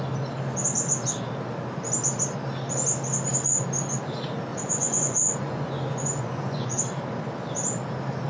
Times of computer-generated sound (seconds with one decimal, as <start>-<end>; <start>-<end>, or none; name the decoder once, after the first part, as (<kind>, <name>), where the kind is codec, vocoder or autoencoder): 4.5-6.8 (vocoder, Vocos)